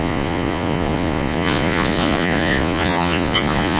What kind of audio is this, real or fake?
fake